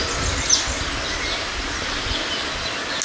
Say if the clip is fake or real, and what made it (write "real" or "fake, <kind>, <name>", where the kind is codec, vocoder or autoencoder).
real